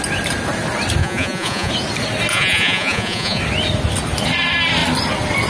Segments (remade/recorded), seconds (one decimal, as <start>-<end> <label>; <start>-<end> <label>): 0.0-1.0 recorded; 1.0-1.7 remade; 1.7-2.3 recorded; 2.3-3.4 remade; 3.4-5.5 recorded